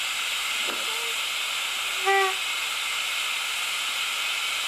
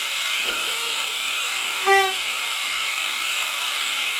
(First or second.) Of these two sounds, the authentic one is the first